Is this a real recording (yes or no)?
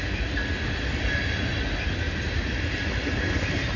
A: yes